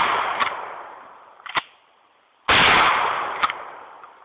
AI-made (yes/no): yes